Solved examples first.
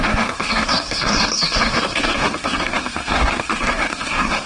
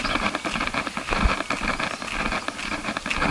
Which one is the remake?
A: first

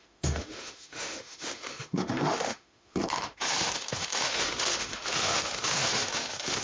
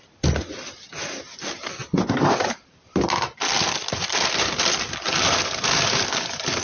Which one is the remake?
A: first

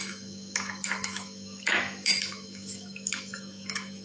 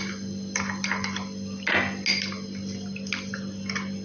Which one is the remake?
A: first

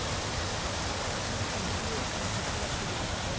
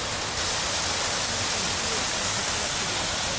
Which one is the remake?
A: first